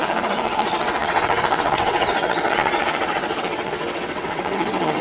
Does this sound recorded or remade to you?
remade